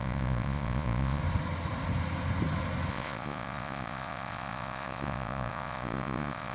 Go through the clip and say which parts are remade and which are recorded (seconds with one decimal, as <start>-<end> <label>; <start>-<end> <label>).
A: 0.0-1.2 remade; 1.2-2.9 recorded; 2.9-6.5 remade